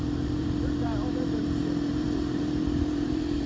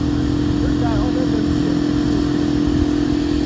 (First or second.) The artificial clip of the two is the first